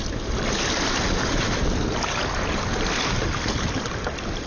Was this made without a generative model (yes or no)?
yes